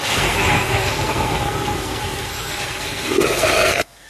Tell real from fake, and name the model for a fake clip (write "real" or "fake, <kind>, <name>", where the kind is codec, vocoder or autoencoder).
fake, codec, SNAC